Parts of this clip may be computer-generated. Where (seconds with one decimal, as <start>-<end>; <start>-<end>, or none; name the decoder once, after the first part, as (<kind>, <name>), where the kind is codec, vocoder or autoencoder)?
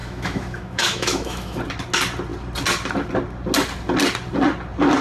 0.0-1.6 (autoencoder, DAC-VAE)